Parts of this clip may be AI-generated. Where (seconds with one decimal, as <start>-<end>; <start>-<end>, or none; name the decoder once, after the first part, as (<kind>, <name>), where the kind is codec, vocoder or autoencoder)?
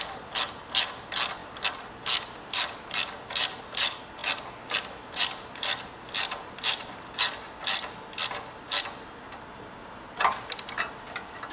none